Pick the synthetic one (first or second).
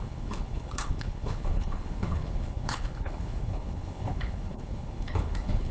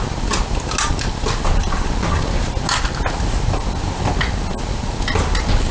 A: first